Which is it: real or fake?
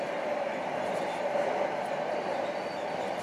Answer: real